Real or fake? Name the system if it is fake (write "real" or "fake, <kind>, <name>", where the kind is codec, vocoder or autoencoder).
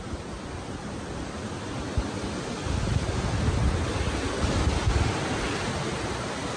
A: real